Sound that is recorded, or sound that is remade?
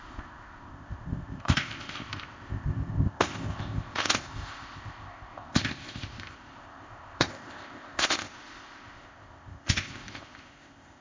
remade